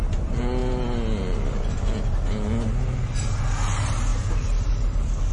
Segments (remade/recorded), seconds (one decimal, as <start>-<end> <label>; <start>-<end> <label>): 0.0-5.3 recorded